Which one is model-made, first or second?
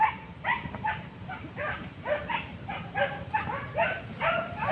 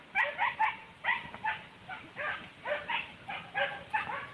first